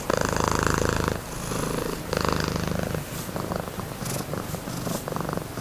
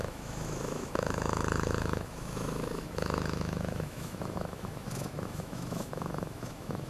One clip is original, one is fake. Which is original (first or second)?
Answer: first